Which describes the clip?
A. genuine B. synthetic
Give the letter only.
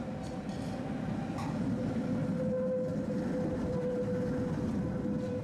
A